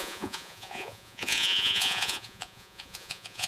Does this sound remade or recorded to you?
remade